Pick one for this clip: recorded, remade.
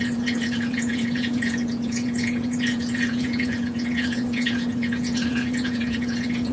remade